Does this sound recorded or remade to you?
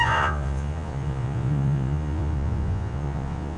remade